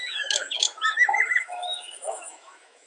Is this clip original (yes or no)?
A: no